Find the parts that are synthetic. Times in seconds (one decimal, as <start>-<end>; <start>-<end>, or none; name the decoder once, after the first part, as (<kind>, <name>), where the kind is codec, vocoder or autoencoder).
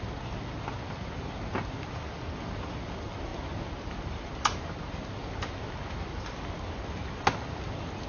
none